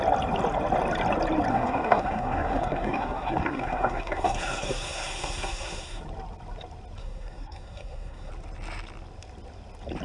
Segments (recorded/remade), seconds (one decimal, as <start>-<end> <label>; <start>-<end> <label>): 0.0-1.5 recorded; 1.5-6.0 remade; 6.0-7.0 recorded; 7.0-8.3 remade; 8.3-10.0 recorded